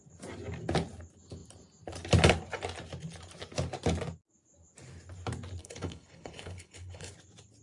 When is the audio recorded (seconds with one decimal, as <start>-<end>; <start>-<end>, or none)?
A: 0.0-5.6; 7.1-7.6